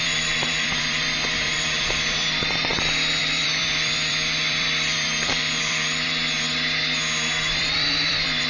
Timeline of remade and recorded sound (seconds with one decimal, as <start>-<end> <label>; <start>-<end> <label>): 0.0-2.7 remade; 2.7-3.2 recorded; 3.2-6.2 remade; 6.2-7.6 recorded; 7.6-8.5 remade